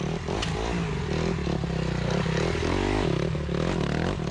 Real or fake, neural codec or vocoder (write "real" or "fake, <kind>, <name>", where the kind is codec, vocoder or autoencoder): real